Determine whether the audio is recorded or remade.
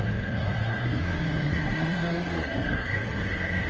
remade